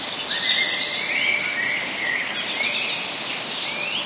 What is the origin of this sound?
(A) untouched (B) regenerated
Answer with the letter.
A